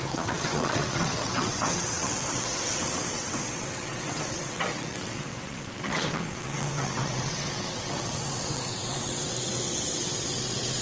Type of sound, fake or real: fake